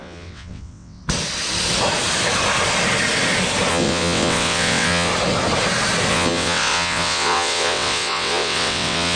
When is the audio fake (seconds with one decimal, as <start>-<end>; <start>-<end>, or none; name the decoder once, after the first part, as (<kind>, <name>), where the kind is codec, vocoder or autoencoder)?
0.0-1.0 (vocoder, WaveNeXt); 3.7-5.1; 6.1-9.2